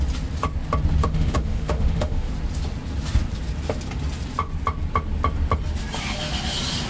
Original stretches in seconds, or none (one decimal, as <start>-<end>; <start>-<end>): 0.0-1.0; 2.3-6.9